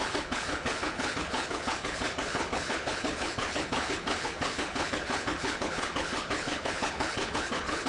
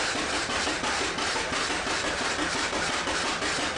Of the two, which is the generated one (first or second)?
first